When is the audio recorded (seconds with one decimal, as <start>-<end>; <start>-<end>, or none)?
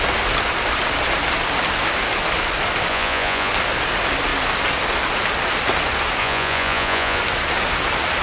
0.0-2.9; 3.5-6.2; 7.2-8.2